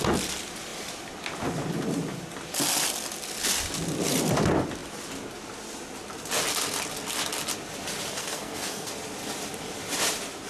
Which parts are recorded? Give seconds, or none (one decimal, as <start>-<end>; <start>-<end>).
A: 0.0-8.1; 8.9-10.5